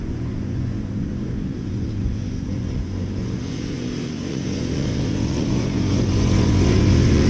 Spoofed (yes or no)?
yes